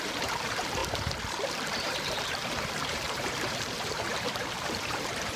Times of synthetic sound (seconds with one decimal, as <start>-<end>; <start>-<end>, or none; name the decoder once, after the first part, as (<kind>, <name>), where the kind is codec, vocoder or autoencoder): 0.0-0.8 (vocoder, BigVGAN v2); 1.5-5.4